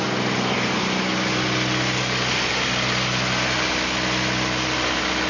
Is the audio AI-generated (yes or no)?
no